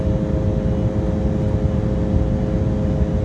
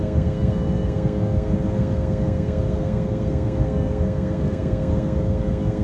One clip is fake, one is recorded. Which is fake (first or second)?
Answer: second